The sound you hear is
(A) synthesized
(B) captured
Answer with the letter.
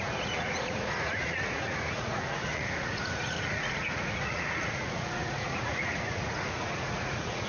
A